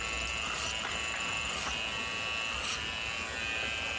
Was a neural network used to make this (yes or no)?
no